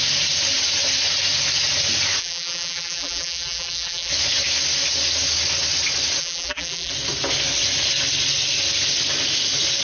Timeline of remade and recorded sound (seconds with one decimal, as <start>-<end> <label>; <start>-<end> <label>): 0.0-2.2 recorded; 2.2-4.1 remade; 4.1-6.2 recorded; 6.2-6.9 remade; 6.9-9.8 recorded